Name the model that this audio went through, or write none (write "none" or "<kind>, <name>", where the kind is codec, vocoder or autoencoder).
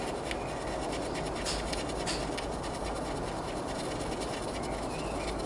none